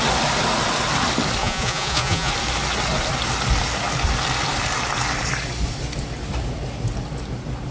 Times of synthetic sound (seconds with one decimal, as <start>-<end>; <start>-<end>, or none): 1.4-2.3